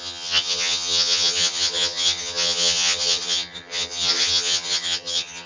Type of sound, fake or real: fake